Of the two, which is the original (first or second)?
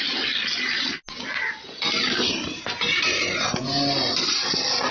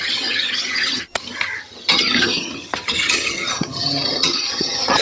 first